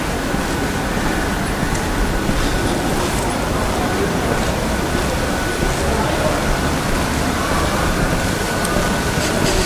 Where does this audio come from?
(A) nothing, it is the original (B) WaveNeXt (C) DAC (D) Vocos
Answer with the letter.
A